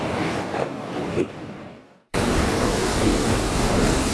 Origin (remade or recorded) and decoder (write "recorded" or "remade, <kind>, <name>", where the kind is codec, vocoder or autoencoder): remade, codec, DAC